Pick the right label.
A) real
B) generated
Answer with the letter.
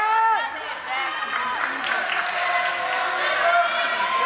A